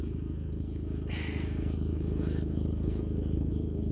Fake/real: fake